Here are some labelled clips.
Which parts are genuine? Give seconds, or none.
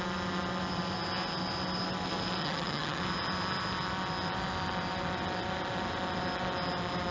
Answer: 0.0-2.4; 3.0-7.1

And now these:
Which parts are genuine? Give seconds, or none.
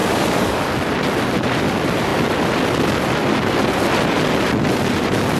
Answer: 0.6-5.4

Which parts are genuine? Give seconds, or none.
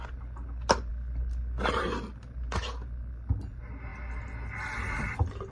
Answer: 0.0-5.5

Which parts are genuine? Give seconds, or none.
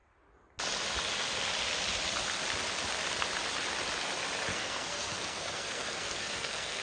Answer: 0.0-4.5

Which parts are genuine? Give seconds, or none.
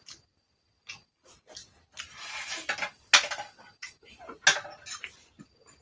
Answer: 0.0-5.8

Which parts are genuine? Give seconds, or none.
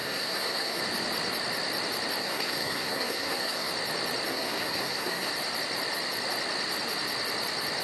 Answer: 0.8-2.2; 3.7-4.3; 5.3-7.8